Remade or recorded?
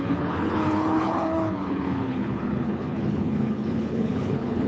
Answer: remade